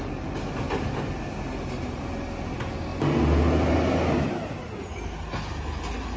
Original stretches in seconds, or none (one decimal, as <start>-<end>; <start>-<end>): 0.0-6.2